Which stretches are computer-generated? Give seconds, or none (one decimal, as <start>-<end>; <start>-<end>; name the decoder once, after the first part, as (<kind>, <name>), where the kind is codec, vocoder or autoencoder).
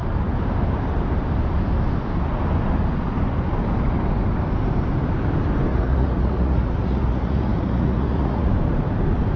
5.7-8.5 (vocoder, Vocos)